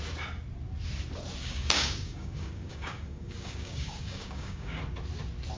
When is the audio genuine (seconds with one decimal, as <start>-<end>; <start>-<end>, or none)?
0.0-1.4; 4.8-5.6